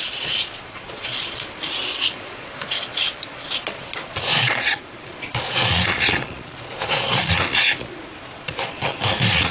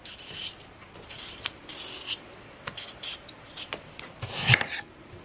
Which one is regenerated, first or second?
first